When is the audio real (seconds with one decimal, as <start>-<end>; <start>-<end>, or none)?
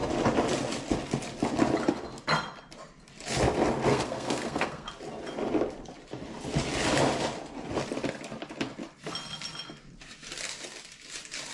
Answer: 0.0-3.9; 4.9-11.5